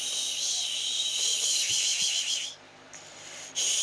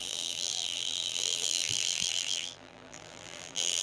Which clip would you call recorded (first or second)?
first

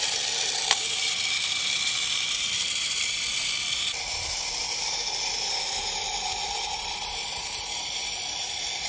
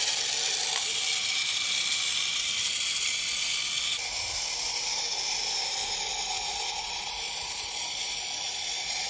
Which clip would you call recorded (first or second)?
second